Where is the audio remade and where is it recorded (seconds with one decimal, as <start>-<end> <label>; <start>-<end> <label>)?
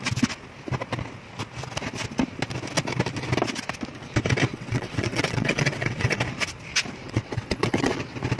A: 0.0-4.5 recorded; 4.5-6.2 remade; 6.2-7.0 recorded; 7.0-8.0 remade; 8.0-8.4 recorded